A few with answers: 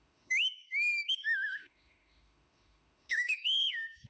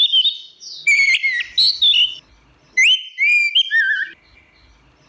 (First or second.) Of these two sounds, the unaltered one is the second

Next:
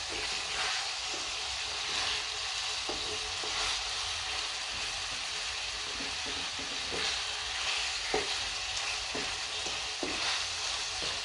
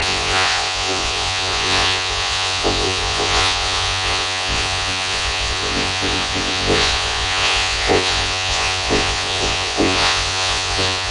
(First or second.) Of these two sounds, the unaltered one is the first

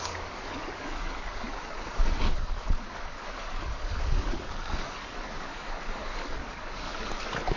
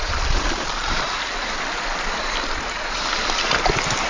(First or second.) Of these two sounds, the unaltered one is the second